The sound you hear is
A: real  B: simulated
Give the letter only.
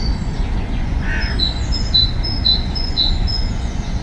B